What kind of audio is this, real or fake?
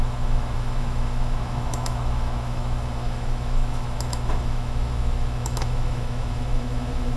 fake